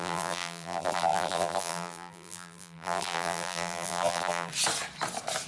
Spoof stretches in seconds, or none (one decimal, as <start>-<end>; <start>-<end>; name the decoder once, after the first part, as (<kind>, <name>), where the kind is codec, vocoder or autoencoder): 0.0-4.5 (vocoder, BigVGAN v2)